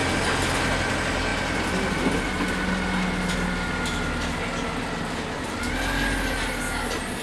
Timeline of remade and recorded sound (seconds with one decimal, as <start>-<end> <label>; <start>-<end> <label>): 0.0-7.2 recorded